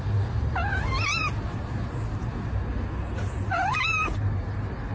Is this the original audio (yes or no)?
yes